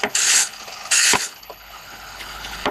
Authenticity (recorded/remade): remade